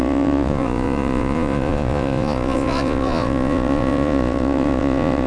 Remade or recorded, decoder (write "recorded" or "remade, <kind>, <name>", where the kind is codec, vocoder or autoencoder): remade, vocoder, Vocos